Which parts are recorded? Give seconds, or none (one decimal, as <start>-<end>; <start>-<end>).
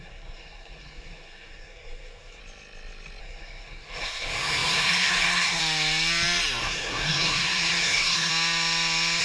2.4-3.2; 5.6-6.6; 8.3-9.2